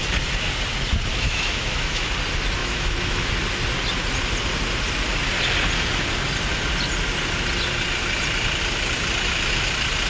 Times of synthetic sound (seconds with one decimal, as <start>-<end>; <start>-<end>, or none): 1.1-2.1; 2.6-3.3